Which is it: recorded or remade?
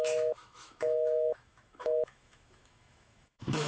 remade